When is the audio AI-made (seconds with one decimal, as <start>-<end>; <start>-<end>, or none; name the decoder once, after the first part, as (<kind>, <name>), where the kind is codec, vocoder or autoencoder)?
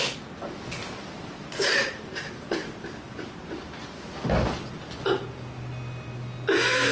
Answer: 0.8-4.3 (vocoder, BigVGAN v2)